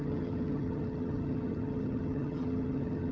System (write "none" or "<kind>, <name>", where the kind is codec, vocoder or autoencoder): vocoder, HiFi-GAN